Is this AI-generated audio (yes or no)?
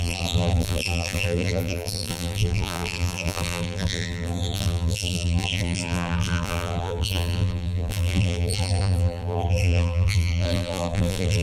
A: yes